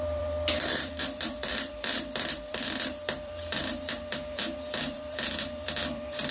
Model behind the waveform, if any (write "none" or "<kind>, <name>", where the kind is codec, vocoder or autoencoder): vocoder, BigVGAN v2